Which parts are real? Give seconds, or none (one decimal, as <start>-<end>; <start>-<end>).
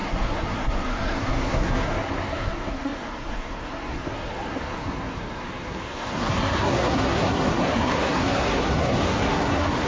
none